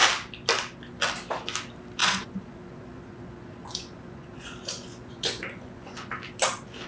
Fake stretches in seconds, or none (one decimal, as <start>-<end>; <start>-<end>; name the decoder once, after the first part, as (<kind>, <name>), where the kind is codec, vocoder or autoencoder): 2.0-6.1 (vocoder, Vocos)